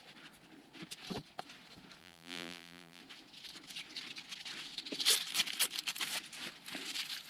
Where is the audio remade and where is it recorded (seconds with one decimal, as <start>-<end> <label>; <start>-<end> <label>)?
0.0-2.0 recorded; 2.0-3.0 remade; 3.0-7.3 recorded